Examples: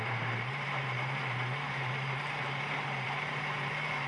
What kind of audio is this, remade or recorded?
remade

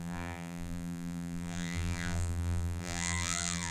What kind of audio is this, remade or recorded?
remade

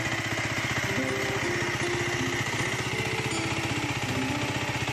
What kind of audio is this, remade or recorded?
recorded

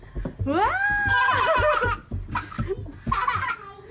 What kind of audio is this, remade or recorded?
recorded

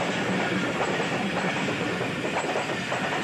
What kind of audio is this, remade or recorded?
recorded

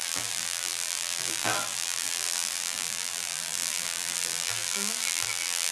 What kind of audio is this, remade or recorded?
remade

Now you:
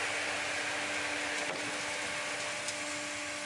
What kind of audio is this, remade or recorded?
recorded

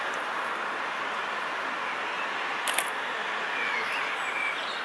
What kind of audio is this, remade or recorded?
recorded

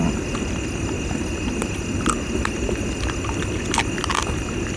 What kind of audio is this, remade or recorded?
recorded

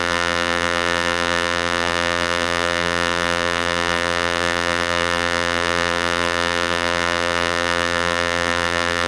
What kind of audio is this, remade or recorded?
remade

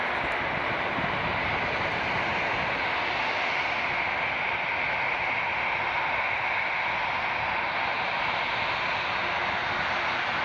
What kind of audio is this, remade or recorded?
recorded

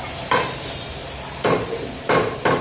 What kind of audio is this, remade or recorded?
recorded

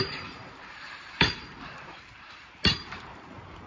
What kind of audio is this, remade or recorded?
remade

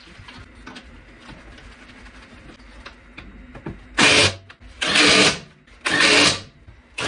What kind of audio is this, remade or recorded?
recorded